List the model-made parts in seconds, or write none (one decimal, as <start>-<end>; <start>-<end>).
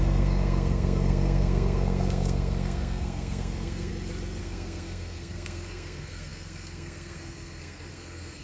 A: 0.0-3.9; 4.4-8.4